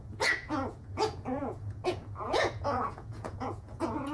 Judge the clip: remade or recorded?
remade